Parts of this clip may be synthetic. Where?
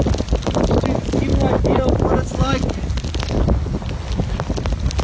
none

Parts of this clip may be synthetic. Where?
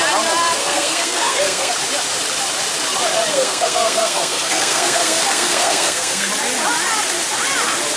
0.6-1.7 (codec, SNAC); 3.3-6.3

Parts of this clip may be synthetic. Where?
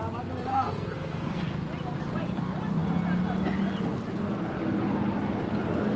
0.5-1.6 (codec, SNAC)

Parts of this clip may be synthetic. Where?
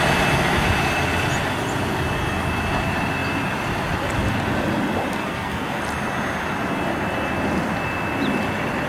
5.2-5.8 (codec, SNAC)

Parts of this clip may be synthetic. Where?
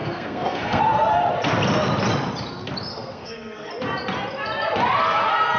0.0-0.8 (codec, SNAC); 2.9-3.7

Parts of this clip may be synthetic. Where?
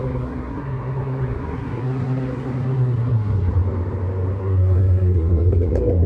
0.0-3.5 (codec, SNAC); 4.4-6.1